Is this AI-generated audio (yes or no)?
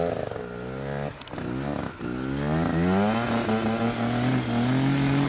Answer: no